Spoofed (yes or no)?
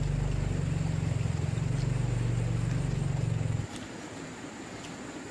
no